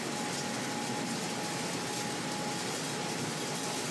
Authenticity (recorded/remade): recorded